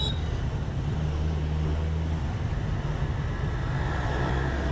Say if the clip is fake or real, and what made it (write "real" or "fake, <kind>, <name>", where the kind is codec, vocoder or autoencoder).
real